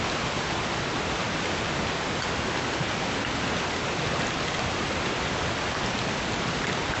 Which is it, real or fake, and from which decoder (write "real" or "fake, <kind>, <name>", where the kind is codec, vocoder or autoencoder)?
real